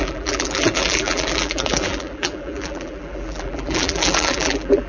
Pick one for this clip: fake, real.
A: fake